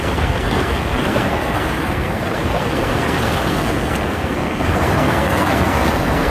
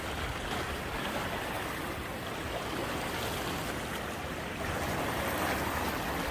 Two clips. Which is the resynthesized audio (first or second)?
first